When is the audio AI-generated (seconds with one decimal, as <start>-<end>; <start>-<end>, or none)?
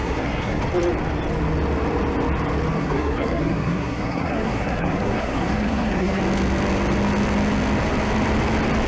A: 0.0-0.6; 2.8-6.2